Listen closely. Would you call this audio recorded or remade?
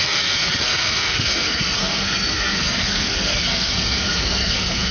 remade